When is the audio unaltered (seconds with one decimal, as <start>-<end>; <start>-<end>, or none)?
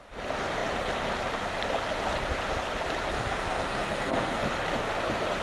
0.0-3.1; 4.4-5.4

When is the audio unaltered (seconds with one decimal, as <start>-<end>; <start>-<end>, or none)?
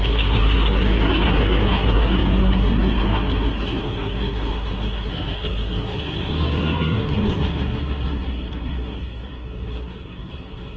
none